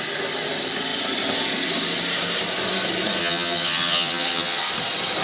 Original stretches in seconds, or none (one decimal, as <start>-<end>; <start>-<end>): 0.0-3.2; 4.7-5.2